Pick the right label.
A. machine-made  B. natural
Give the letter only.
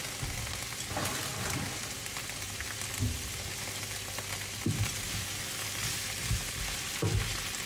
B